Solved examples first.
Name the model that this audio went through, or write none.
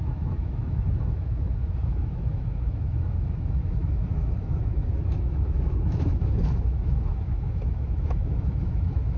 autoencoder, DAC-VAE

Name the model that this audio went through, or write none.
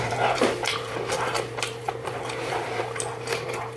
vocoder, BigVGAN v2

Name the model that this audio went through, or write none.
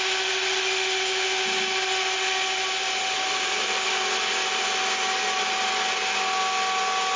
none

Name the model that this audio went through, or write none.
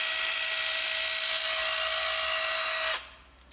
none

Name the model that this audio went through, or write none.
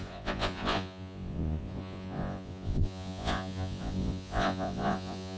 vocoder, Vocos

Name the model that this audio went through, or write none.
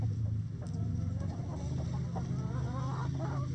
none